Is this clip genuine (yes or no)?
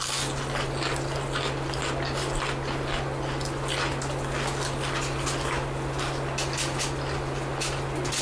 yes